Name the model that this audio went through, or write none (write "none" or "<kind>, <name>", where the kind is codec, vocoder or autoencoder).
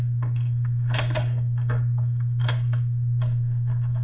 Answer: codec, SNAC